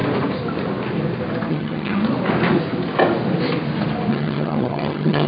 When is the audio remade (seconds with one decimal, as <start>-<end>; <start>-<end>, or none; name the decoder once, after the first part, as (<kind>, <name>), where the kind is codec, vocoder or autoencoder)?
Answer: 1.5-2.0 (vocoder, HiFi-GAN); 4.1-5.3